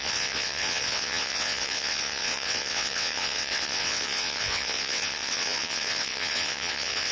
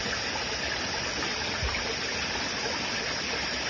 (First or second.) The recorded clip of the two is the second